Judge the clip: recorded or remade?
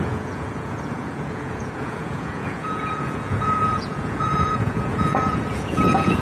remade